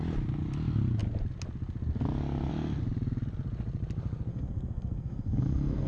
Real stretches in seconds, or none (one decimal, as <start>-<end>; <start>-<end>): 0.0-4.3